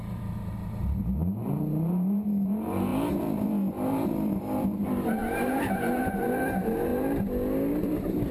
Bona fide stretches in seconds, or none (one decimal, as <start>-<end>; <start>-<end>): 6.9-7.8